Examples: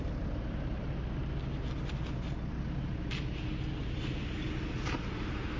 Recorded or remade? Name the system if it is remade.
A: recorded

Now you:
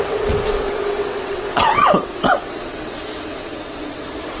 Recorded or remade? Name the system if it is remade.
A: remade, vocoder, WaveNeXt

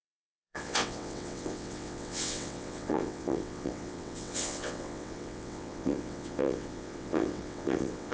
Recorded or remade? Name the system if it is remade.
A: remade, vocoder, WaveNeXt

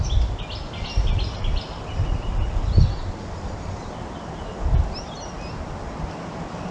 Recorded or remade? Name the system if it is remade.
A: recorded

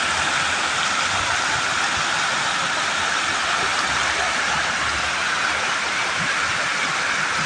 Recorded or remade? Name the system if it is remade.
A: recorded